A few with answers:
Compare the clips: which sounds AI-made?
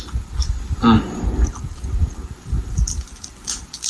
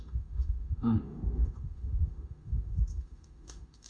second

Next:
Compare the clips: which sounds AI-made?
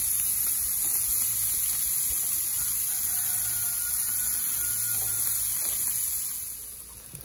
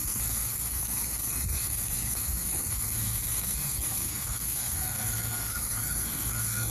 second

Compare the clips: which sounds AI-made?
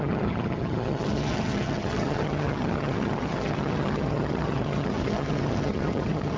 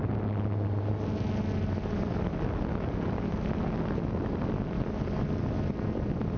first